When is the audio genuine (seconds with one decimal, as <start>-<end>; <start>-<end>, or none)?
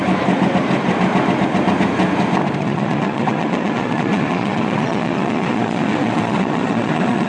0.0-2.6